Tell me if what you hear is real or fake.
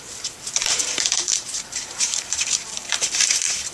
fake